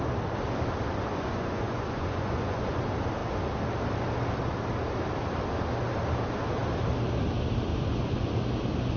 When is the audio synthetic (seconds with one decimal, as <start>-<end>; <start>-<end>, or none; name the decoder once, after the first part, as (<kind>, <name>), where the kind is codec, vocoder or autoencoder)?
1.1-2.8 (vocoder, Vocos); 7.7-8.3